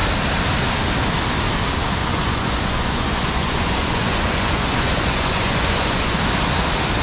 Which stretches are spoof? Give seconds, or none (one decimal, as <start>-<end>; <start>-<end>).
2.0-6.2